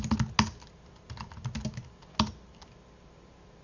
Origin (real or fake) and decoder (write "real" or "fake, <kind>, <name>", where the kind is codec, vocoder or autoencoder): real